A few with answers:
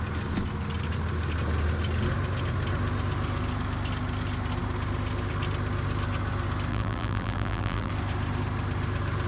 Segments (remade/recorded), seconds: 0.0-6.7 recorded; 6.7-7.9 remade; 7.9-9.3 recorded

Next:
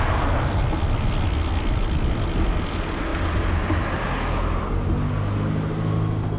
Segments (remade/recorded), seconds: 0.0-6.4 recorded

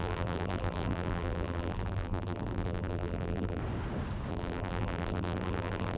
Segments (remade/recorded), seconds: 0.0-3.6 remade; 3.6-4.3 recorded; 4.3-6.0 remade

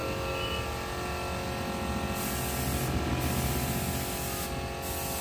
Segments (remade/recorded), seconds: 0.0-5.2 recorded

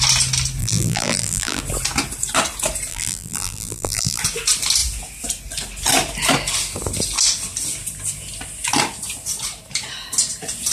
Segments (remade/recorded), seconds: 0.0-0.6 recorded; 0.6-1.6 remade; 1.6-2.9 recorded; 2.9-4.2 remade; 4.2-10.7 recorded

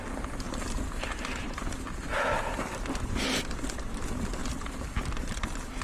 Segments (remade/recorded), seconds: 0.0-2.1 recorded; 2.1-2.7 remade; 2.7-4.4 recorded; 4.4-5.8 remade

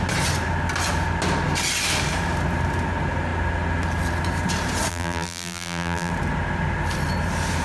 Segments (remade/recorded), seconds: 0.0-4.9 recorded; 4.9-6.1 remade; 6.1-7.6 recorded

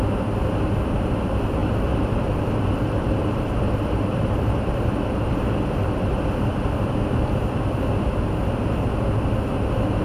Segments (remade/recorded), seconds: 0.0-1.6 recorded; 1.6-6.2 remade; 6.2-10.0 recorded